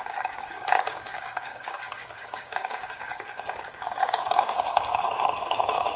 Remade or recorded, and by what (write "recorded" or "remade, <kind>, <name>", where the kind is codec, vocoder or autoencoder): remade, codec, DAC